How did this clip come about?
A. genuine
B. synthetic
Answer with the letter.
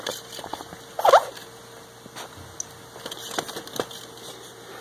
A